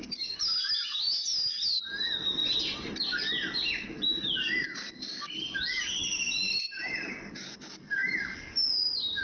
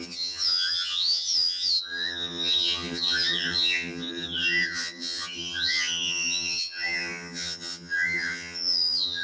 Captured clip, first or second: first